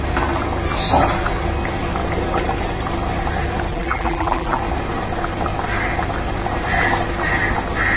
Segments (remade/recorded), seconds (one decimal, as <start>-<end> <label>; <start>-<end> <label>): 0.0-3.7 recorded; 3.7-4.6 remade; 4.6-8.0 recorded